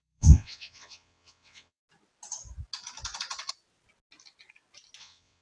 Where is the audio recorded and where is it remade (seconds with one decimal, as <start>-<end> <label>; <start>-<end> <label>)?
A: 0.0-1.8 remade; 1.8-5.0 recorded; 5.0-5.4 remade